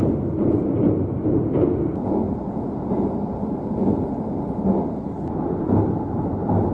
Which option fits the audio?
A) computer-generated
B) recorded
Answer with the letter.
B